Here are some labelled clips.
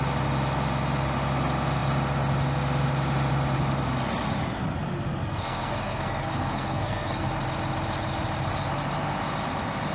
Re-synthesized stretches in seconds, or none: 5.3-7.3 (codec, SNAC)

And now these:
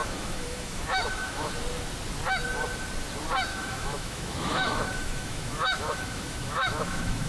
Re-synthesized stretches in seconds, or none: 0.0-1.5 (autoencoder, DAC-VAE); 3.5-7.3

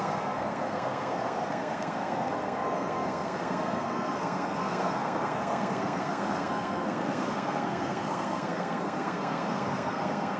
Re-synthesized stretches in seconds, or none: 0.0-10.4 (codec, SNAC)